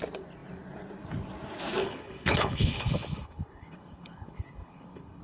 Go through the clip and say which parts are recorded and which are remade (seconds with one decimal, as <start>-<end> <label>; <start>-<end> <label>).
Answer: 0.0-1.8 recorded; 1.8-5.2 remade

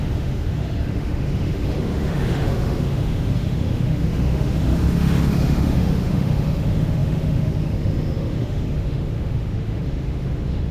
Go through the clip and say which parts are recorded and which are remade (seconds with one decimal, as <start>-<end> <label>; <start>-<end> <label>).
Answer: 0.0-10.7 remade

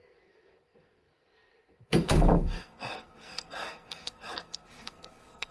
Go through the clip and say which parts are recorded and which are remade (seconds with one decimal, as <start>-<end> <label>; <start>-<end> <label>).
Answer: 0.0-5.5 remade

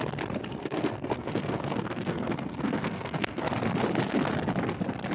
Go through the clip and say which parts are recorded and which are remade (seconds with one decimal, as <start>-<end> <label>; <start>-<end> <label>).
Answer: 0.0-0.5 recorded; 0.5-3.5 remade; 3.5-5.1 recorded